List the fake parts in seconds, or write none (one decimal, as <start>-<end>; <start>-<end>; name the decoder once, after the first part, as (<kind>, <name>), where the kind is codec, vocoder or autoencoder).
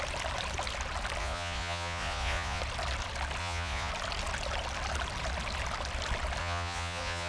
1.2-2.6 (vocoder, Vocos); 3.4-3.9; 6.4-7.3